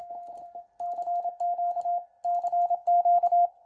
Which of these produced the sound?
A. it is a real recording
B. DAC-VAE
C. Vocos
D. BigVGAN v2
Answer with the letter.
A